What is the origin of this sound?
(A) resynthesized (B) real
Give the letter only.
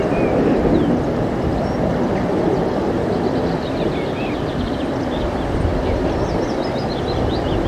B